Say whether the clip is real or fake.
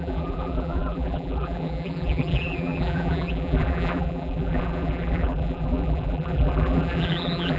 fake